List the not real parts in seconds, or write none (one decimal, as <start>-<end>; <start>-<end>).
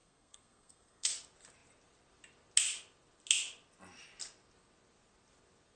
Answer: 0.0-1.1